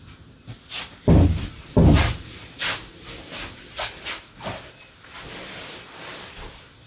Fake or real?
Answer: real